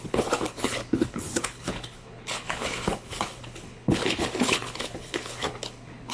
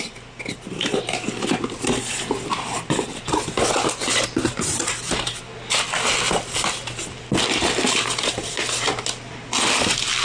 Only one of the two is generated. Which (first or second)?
first